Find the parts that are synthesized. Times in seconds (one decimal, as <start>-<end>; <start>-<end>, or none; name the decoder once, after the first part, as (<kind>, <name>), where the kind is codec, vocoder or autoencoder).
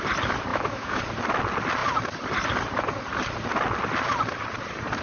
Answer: 0.5-1.0 (autoencoder, DAC-VAE)